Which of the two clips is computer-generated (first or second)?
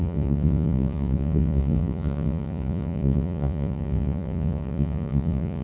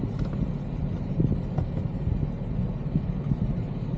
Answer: first